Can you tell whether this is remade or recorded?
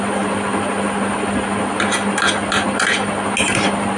recorded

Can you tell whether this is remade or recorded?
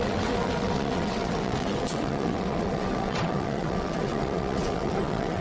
remade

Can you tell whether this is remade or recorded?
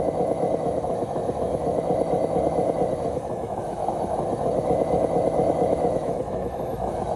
remade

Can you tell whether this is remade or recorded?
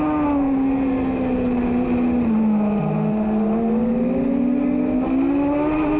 recorded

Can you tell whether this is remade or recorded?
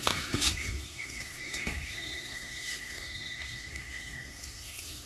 remade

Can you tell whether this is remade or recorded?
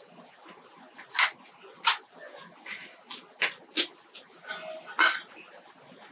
recorded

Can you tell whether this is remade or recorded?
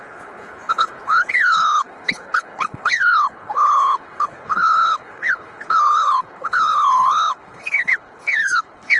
remade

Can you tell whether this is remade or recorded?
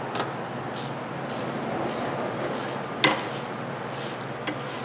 recorded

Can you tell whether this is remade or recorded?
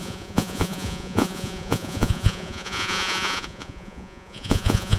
remade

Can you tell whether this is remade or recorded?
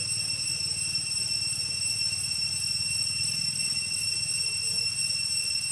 recorded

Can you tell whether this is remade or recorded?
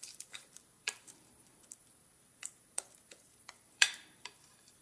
remade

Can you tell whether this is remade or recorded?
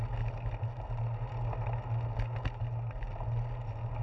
recorded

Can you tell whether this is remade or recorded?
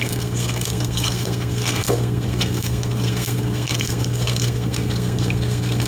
remade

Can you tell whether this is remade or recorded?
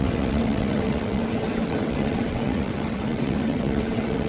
remade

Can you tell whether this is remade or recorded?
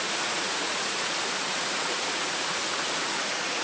remade